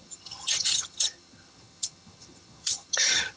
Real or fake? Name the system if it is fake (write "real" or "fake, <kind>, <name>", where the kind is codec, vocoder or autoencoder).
fake, vocoder, HiFi-GAN